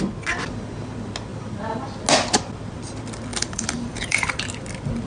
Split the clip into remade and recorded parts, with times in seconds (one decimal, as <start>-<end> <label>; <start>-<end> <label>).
0.0-3.3 recorded; 3.3-4.4 remade; 4.4-5.1 recorded